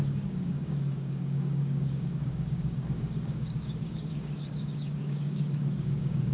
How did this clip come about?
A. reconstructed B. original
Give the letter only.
A